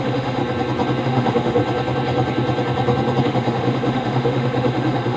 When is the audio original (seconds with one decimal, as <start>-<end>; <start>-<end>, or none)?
0.4-1.0; 1.6-3.2